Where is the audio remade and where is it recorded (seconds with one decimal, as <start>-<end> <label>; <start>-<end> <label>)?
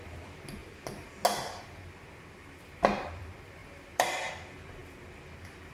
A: 0.0-3.6 recorded; 3.6-4.3 remade; 4.3-5.7 recorded